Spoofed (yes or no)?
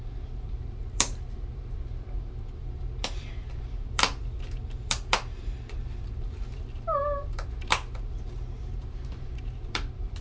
yes